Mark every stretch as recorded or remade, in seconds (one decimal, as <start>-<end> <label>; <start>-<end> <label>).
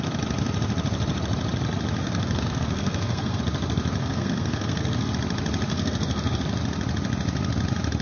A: 0.0-2.0 recorded; 2.0-3.4 remade; 3.4-4.0 recorded; 4.0-5.1 remade; 5.1-5.7 recorded; 5.7-6.4 remade; 6.4-8.0 recorded